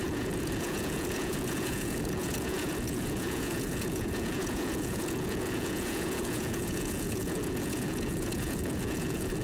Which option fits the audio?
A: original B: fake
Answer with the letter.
B